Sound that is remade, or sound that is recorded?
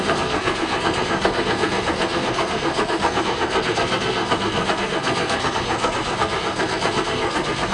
remade